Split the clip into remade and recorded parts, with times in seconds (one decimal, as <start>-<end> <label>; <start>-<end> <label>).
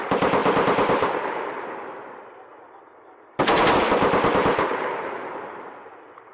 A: 0.0-6.3 recorded